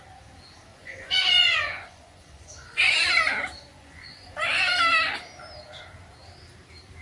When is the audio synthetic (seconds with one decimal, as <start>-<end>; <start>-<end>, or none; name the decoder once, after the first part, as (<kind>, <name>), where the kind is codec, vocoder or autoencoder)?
0.7-3.1 (vocoder, Vocos); 3.7-4.8